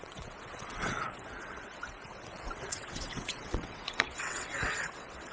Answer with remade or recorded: remade